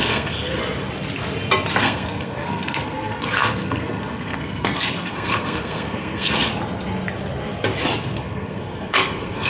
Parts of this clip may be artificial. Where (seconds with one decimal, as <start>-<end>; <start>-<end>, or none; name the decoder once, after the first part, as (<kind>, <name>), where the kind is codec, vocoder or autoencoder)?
0.0-0.6 (codec, SNAC); 1.8-6.5; 8.0-9.5